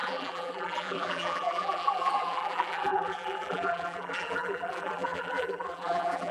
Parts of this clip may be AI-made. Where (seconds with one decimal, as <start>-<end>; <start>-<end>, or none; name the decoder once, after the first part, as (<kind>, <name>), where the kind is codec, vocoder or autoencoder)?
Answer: 0.0-6.3 (vocoder, BigVGAN v2)